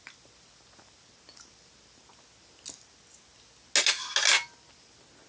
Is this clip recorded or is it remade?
recorded